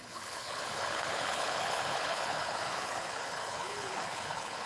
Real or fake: fake